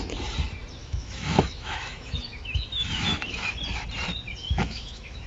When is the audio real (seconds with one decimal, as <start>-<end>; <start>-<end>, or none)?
0.0-0.8; 3.5-4.4